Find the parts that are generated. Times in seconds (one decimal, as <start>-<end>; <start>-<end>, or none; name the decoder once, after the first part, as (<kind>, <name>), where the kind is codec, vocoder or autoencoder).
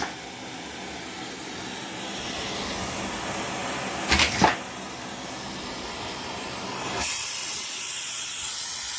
7.4-9.0 (vocoder, WaveNeXt)